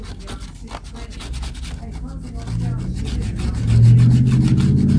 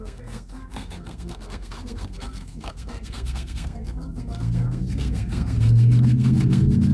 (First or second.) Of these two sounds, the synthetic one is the second